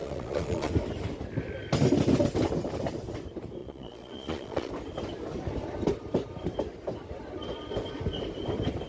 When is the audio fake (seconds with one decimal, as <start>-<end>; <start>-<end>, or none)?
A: 0.0-0.7; 3.6-4.7

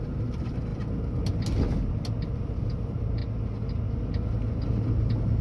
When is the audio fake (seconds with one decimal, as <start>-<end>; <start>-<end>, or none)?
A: none